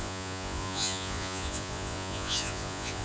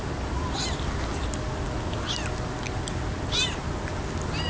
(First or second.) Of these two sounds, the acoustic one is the second